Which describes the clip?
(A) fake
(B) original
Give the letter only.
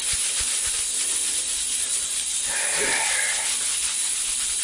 B